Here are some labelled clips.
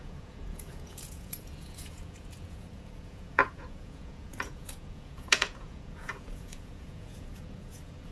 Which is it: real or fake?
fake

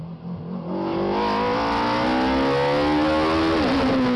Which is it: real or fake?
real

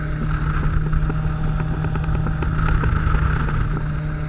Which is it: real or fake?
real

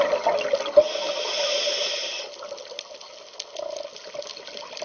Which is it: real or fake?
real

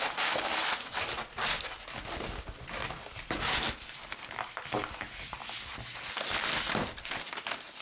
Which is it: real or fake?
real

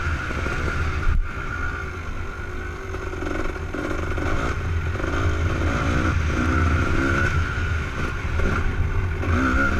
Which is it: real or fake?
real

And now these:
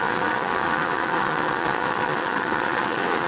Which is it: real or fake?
fake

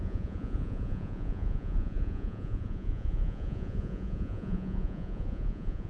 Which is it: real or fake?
fake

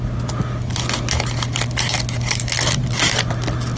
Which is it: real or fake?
real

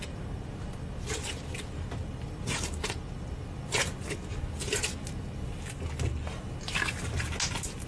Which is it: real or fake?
real